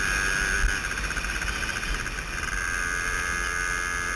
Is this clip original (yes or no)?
yes